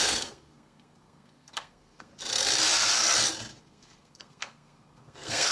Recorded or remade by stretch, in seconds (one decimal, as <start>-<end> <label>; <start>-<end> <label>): 0.0-2.1 remade; 2.1-3.6 recorded; 3.6-5.5 remade